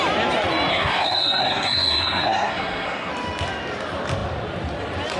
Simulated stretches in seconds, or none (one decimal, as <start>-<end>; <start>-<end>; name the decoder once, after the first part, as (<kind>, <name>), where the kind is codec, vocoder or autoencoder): 0.7-3.1 (codec, SNAC)